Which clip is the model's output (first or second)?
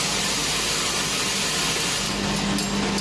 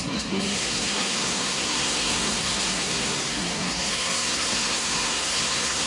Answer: second